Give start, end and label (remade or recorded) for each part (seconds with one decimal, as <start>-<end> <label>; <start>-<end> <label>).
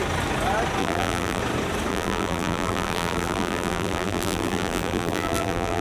0.0-0.8 recorded; 0.8-1.4 remade; 1.4-1.9 recorded; 1.9-5.8 remade